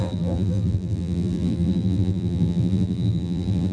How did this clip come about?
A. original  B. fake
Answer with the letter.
B